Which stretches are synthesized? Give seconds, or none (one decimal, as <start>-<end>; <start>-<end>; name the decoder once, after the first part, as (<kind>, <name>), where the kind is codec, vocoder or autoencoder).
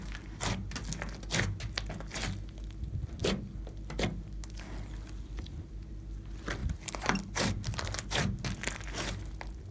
none